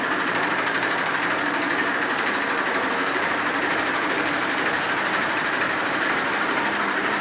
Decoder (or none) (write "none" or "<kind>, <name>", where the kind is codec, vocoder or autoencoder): vocoder, BigVGAN v2